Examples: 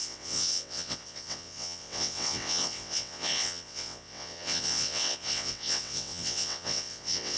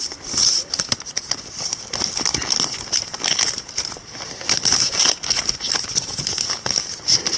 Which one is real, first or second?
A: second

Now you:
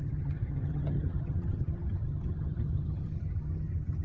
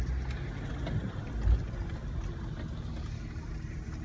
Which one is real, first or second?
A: second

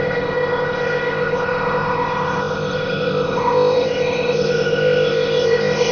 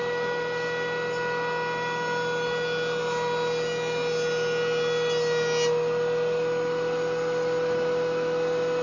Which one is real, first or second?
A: second